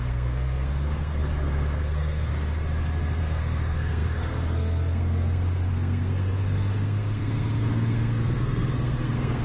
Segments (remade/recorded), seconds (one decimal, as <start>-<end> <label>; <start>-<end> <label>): 0.0-2.3 remade; 2.3-3.2 recorded; 3.2-9.4 remade